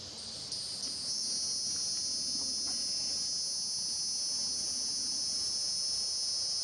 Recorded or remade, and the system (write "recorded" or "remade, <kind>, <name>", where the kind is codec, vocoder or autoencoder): recorded